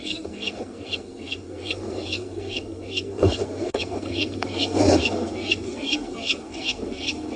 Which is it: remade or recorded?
remade